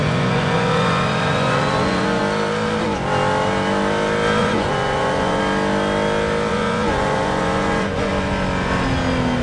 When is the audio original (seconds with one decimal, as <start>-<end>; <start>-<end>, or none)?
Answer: 2.2-4.4; 5.4-6.5; 8.1-9.4